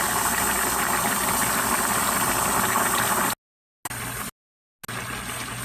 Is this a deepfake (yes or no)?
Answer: no